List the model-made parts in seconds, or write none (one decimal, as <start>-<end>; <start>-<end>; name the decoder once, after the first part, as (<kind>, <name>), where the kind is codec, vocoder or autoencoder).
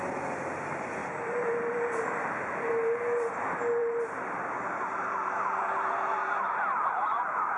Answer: 1.0-2.7 (vocoder, BigVGAN v2); 3.8-7.1